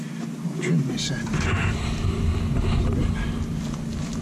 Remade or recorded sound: recorded